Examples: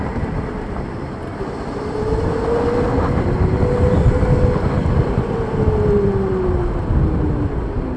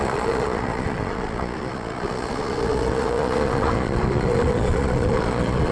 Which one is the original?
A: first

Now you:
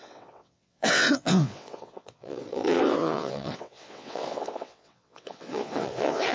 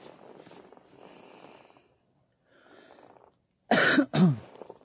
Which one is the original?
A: second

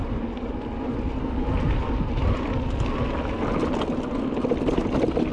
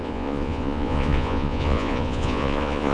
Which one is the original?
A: first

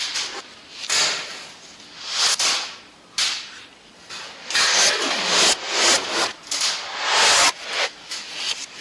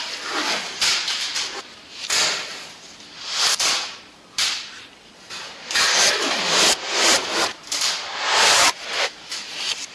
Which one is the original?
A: first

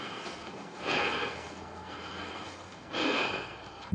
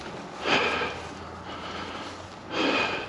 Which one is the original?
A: second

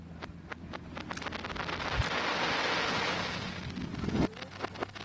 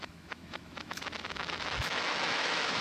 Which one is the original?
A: first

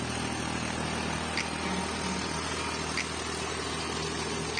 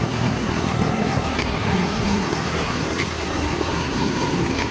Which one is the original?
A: first